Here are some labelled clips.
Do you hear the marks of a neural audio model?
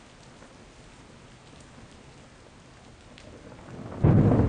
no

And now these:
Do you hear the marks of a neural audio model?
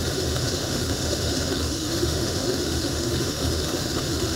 yes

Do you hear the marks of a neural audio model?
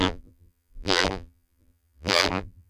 yes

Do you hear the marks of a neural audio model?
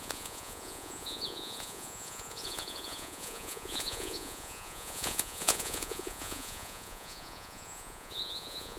yes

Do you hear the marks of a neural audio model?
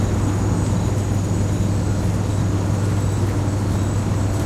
no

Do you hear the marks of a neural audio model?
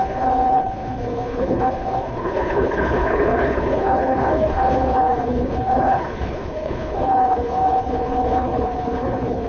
yes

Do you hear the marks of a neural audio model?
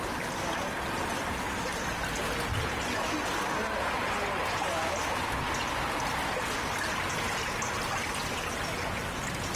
no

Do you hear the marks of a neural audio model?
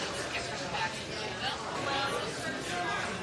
no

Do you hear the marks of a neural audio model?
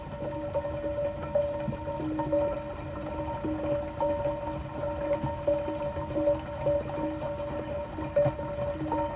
no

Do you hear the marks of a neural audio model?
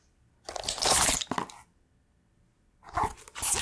no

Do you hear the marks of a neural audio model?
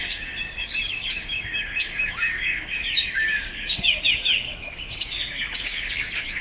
yes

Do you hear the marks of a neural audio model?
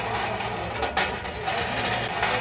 no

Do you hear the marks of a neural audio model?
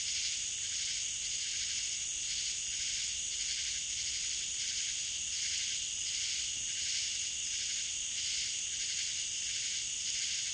no